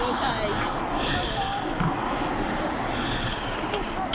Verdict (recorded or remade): recorded